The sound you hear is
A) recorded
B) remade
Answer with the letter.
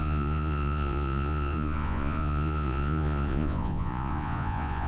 B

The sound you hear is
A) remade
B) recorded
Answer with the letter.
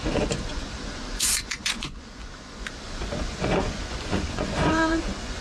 A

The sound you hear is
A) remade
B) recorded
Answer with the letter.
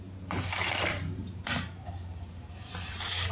A